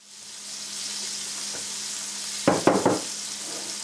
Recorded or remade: recorded